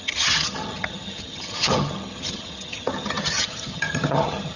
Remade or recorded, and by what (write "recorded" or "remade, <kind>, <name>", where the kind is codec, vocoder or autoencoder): remade, vocoder, HiFi-GAN